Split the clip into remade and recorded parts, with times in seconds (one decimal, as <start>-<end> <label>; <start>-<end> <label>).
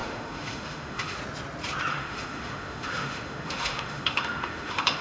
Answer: 0.0-1.2 remade; 1.2-1.9 recorded; 1.9-5.0 remade